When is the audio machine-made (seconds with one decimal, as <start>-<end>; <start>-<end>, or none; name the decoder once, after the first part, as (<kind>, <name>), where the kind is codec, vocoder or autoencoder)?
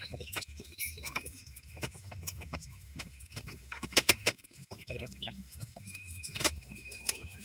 0.0-7.4 (autoencoder, DAC-VAE)